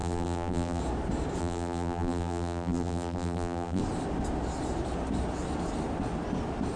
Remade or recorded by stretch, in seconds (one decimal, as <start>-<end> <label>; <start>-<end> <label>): 0.0-0.8 remade; 0.8-1.4 recorded; 1.4-3.8 remade; 3.8-6.8 recorded